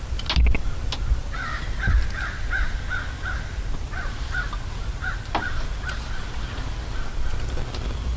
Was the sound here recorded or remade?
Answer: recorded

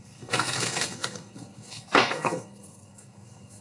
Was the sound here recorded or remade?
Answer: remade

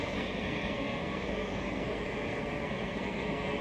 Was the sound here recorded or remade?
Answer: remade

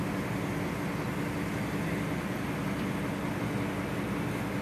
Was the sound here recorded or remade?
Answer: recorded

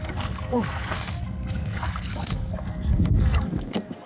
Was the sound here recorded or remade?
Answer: remade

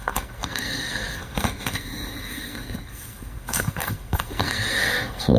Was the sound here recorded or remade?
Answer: remade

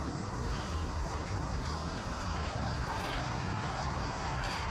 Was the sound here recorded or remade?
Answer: remade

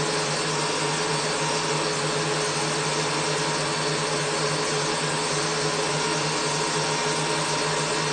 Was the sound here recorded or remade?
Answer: recorded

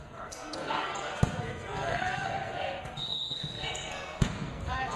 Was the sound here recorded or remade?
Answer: remade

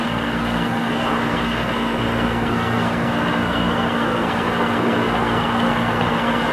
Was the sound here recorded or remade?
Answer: remade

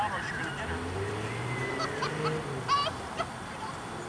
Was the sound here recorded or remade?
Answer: recorded